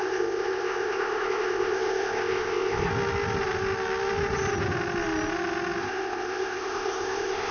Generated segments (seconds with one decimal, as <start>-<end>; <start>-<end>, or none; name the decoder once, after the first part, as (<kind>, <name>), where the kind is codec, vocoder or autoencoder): 0.0-2.9 (codec, ZipCodec); 5.8-7.5